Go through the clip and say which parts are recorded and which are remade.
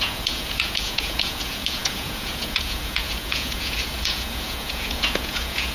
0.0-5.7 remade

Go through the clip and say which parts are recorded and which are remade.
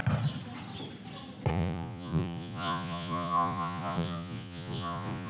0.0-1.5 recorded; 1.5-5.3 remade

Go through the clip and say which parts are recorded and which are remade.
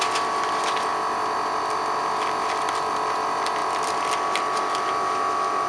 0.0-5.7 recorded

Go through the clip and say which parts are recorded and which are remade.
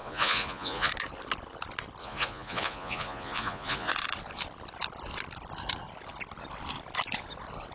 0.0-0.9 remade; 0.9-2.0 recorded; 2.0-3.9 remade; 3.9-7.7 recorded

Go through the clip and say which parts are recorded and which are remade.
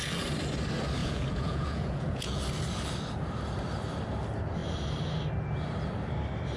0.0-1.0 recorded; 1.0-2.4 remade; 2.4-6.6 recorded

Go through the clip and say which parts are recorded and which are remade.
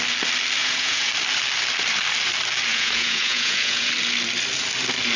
0.0-0.6 recorded; 0.6-1.1 remade; 1.1-2.7 recorded; 2.7-3.9 remade; 3.9-5.2 recorded